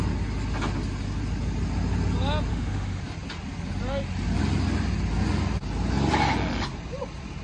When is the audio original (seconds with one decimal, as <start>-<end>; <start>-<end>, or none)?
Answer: 0.0-2.5; 3.0-7.4